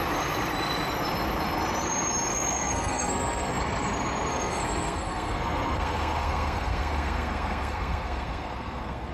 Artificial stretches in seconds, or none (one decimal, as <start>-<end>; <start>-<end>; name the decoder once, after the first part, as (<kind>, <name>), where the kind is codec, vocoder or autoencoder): 2.3-3.6 (codec, SNAC); 4.3-9.1